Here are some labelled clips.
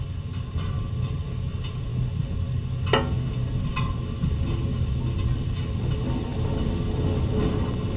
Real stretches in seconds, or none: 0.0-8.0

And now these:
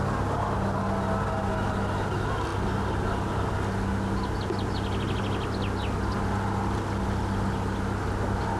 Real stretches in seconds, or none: 0.0-8.6